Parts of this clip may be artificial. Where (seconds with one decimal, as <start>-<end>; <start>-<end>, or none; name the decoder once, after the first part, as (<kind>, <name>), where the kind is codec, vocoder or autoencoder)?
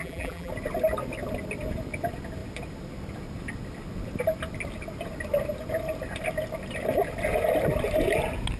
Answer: 0.0-0.5 (vocoder, BigVGAN v2)